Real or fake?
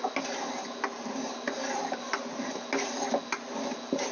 real